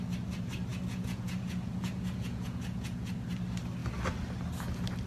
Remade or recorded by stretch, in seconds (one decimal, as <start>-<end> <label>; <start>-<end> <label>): 0.0-0.7 recorded; 0.7-3.1 remade; 3.1-5.1 recorded